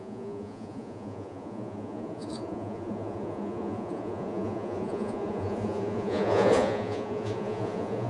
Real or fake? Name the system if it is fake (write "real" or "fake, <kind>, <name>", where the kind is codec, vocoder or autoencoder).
fake, vocoder, Vocos